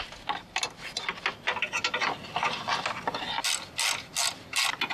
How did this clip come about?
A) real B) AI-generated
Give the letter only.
A